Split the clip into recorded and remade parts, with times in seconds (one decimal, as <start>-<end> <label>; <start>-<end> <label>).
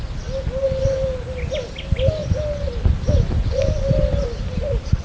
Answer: 0.0-5.0 recorded